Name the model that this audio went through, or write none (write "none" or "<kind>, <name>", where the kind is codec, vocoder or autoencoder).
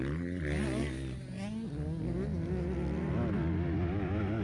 none